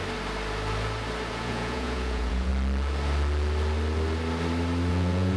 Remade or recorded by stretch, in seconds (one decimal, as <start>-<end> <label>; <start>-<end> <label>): 0.0-1.3 recorded; 1.3-2.5 remade; 2.5-4.9 recorded; 4.9-5.4 remade